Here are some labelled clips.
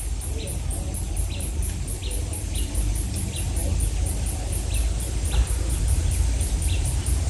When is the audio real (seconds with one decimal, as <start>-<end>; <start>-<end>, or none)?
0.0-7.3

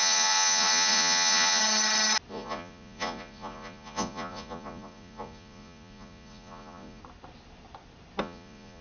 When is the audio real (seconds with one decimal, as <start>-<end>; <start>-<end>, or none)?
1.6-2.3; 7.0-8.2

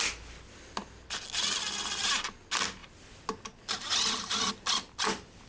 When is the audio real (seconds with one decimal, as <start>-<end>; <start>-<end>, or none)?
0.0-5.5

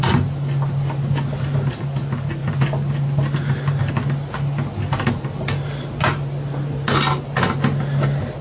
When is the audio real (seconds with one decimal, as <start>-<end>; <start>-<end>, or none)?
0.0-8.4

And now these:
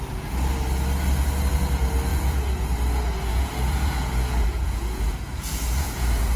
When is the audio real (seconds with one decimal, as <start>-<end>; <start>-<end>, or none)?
0.0-2.1; 2.7-3.3

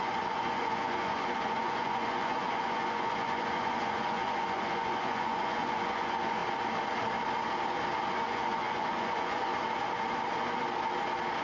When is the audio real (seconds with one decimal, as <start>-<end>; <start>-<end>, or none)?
6.4-8.1; 9.5-11.4

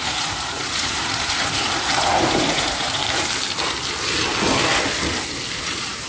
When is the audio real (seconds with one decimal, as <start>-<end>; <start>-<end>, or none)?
3.0-5.6

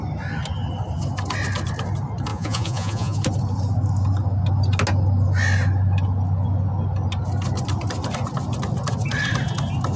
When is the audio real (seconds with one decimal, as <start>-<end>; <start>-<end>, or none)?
0.0-2.3; 3.2-10.0